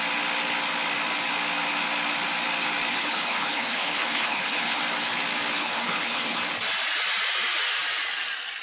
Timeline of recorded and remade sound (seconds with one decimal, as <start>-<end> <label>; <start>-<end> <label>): 0.0-2.9 recorded; 2.9-4.8 remade; 4.8-5.6 recorded; 5.6-6.4 remade; 6.4-8.6 recorded